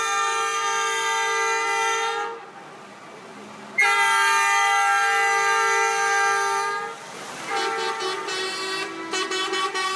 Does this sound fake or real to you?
real